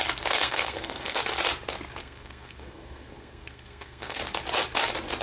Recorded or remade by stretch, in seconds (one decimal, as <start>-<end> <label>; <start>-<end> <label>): 0.0-0.4 recorded; 0.4-1.2 remade; 1.2-2.0 recorded; 2.0-4.2 remade; 4.2-5.2 recorded